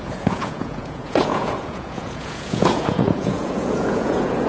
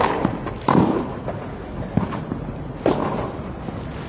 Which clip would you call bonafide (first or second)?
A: second